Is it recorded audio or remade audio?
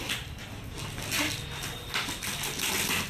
recorded